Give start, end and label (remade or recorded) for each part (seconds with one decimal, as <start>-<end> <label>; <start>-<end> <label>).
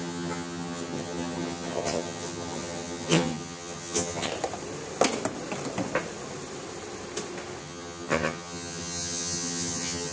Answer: 0.0-4.3 remade; 4.3-7.6 recorded; 7.6-10.1 remade